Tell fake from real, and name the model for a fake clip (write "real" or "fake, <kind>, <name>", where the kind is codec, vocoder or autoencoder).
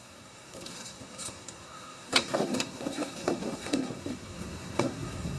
fake, codec, SNAC